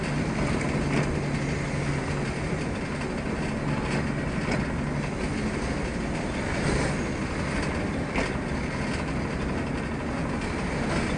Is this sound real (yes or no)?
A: yes